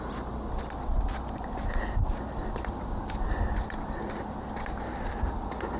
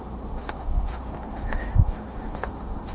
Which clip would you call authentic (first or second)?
first